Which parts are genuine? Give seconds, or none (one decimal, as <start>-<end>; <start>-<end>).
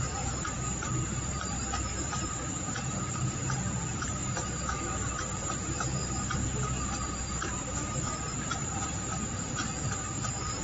9.6-10.6